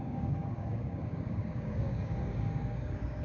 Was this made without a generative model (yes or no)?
no